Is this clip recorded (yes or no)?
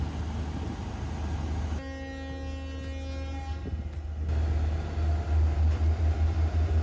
yes